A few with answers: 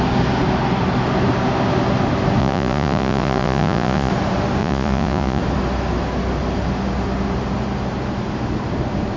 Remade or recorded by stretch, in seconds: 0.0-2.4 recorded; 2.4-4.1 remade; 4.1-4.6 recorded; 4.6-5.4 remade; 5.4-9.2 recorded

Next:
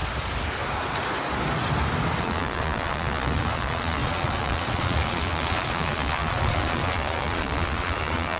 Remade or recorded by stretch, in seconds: 0.0-2.2 recorded; 2.2-8.4 remade

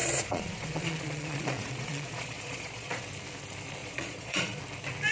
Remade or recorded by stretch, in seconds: 0.0-3.0 remade; 3.0-3.8 recorded; 3.8-4.6 remade; 4.6-5.1 recorded